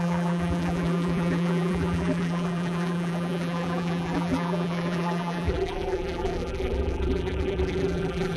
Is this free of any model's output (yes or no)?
no